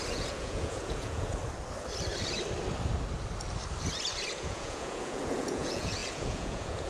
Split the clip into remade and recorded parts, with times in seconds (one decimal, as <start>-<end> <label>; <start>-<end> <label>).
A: 0.0-1.4 remade; 1.4-4.3 recorded; 4.3-6.9 remade